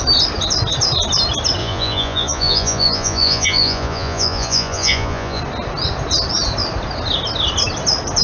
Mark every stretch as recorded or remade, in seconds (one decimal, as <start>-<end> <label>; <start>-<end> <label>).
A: 0.0-1.6 recorded; 1.6-5.4 remade; 5.4-8.2 recorded